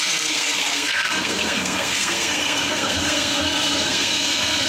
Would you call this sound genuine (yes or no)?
no